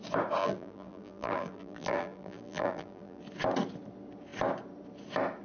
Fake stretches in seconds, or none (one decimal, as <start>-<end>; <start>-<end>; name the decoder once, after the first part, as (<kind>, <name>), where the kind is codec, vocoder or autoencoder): 0.4-3.2 (vocoder, BigVGAN v2)